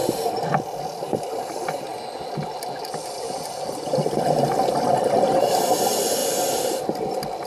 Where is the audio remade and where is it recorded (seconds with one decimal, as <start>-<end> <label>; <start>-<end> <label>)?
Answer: 0.0-7.5 recorded